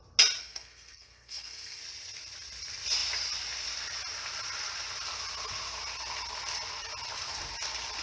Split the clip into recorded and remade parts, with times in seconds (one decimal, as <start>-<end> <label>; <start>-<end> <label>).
0.0-0.4 recorded; 0.4-1.8 remade; 1.8-8.0 recorded